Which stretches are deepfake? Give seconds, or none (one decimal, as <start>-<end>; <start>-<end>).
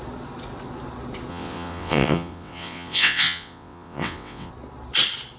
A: 1.3-4.5